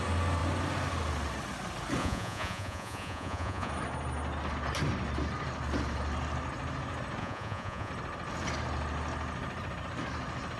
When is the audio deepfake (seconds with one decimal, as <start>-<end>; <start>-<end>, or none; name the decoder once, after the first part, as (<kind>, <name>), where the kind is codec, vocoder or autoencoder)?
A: 2.0-3.7 (vocoder, Vocos); 7.2-7.9

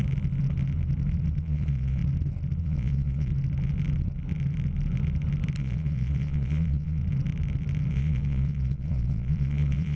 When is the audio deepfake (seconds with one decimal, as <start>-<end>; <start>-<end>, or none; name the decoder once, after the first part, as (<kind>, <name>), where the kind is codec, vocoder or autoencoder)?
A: 1.4-2.0 (vocoder, Vocos); 2.6-3.3; 5.6-7.0; 7.9-10.0